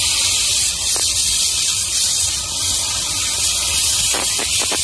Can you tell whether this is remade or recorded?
recorded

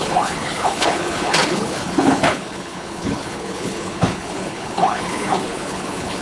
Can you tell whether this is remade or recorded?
remade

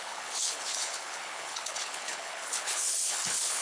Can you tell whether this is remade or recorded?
remade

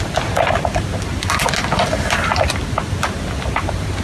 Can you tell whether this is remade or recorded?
recorded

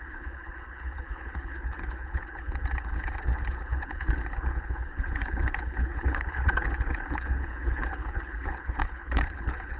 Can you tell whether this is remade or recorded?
remade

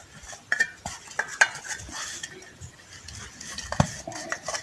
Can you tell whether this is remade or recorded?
recorded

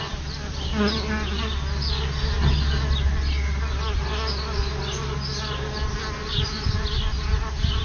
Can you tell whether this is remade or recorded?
recorded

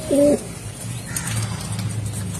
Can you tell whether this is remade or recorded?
recorded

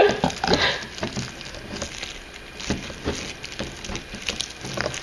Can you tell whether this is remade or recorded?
recorded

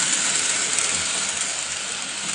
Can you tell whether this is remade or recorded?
recorded